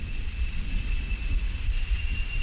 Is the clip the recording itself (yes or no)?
no